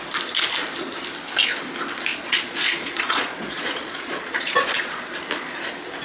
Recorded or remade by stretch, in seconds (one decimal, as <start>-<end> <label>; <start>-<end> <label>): 0.0-2.1 recorded; 2.1-5.1 remade; 5.1-6.0 recorded

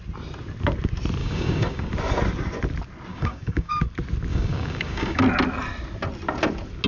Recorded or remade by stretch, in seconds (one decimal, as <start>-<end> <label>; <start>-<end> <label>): 0.0-1.2 recorded; 1.2-1.9 remade; 1.9-3.1 recorded; 3.1-3.7 remade; 3.7-4.3 recorded; 4.3-5.2 remade; 5.2-6.9 recorded

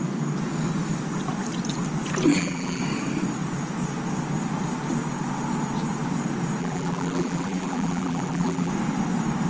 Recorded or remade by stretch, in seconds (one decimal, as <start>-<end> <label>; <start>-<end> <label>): 0.0-2.3 recorded; 2.3-2.8 remade; 2.8-6.6 recorded; 6.6-8.7 remade; 8.7-9.5 recorded

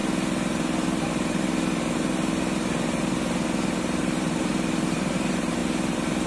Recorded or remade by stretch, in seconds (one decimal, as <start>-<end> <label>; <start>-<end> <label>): 0.0-3.8 recorded; 3.8-5.6 remade; 5.6-6.3 recorded

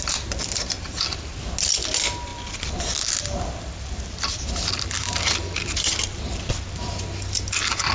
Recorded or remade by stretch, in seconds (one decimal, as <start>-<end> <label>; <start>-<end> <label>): 0.0-2.3 recorded; 2.3-7.0 remade; 7.0-7.9 recorded

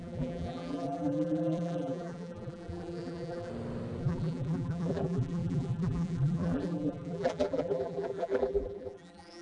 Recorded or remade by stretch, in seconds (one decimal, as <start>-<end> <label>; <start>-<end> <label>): 0.0-3.5 remade; 3.5-4.0 recorded; 4.0-9.4 remade